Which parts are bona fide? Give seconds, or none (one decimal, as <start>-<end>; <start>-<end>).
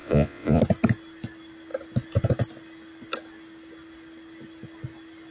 0.6-5.3